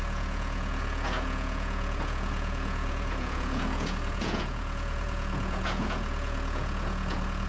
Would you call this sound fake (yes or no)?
yes